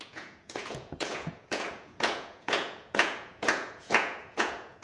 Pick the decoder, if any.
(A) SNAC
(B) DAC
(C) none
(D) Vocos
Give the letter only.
D